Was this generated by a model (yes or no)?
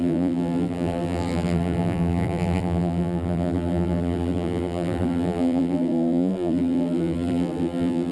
yes